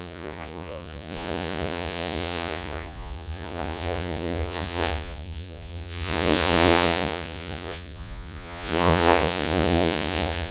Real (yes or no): no